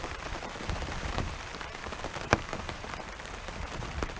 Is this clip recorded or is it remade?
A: remade